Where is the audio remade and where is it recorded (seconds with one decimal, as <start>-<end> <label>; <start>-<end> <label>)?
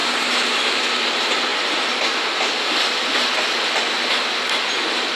0.0-0.8 remade; 0.8-5.2 recorded